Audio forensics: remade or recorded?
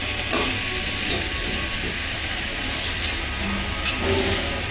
recorded